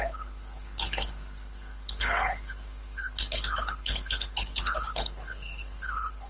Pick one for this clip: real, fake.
fake